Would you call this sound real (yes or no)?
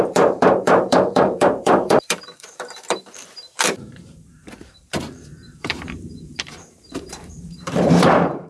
no